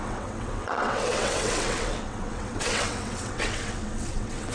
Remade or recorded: remade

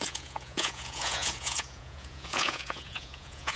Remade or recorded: remade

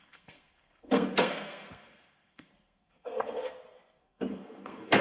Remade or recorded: remade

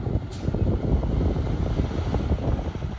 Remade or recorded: recorded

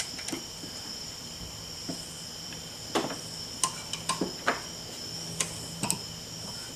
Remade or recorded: recorded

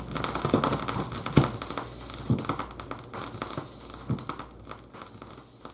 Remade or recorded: recorded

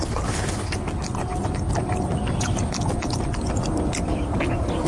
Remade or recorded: recorded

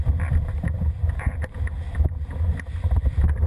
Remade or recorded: recorded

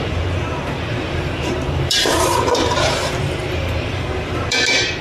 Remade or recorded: remade